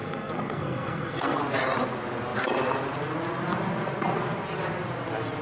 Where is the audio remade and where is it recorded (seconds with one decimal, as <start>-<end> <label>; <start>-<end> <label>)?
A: 0.0-1.4 remade; 1.4-5.4 recorded

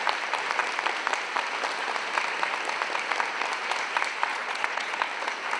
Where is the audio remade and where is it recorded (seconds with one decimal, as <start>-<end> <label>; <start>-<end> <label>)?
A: 0.0-4.3 recorded; 4.3-5.0 remade; 5.0-5.6 recorded

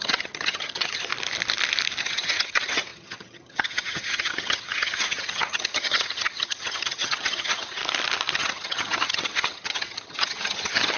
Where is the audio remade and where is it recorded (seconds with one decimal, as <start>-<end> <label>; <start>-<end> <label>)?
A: 0.0-1.1 remade; 1.1-2.0 recorded; 2.0-7.8 remade; 7.8-8.3 recorded; 8.3-11.0 remade

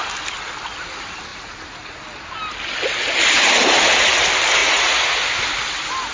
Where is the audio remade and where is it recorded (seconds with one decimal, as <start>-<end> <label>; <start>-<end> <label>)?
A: 0.0-1.3 recorded; 1.3-2.0 remade; 2.0-4.6 recorded; 4.6-5.2 remade; 5.2-6.1 recorded